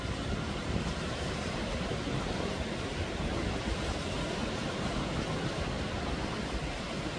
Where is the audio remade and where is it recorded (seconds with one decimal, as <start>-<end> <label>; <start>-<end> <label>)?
0.0-0.6 recorded; 0.6-3.2 remade; 3.2-4.4 recorded; 4.4-4.9 remade; 4.9-7.2 recorded